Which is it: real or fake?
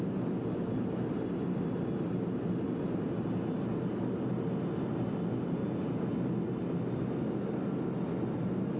real